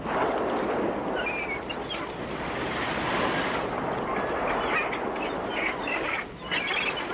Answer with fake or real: real